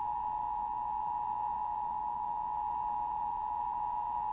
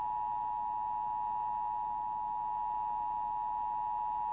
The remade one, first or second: first